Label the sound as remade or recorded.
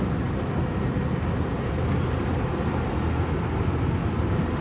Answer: recorded